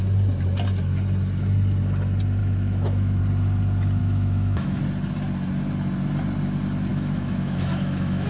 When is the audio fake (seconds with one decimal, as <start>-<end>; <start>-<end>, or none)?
2.4-3.2; 4.0-4.8; 6.9-8.3

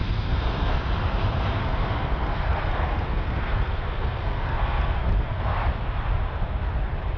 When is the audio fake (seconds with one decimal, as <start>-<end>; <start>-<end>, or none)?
0.0-0.8; 1.6-5.4

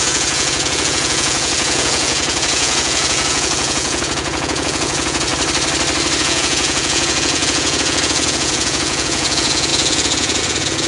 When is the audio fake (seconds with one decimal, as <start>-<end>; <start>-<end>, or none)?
0.0-5.3; 6.2-10.9

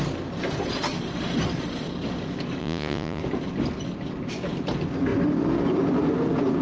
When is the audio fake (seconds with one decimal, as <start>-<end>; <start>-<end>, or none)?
2.6-3.2

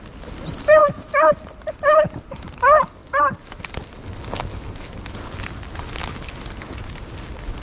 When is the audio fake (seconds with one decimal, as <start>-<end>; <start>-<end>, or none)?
0.8-1.3